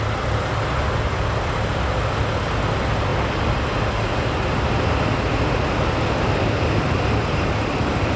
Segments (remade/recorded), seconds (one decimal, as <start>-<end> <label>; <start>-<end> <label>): 0.0-8.2 recorded